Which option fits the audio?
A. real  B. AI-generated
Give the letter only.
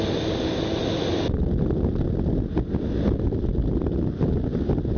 A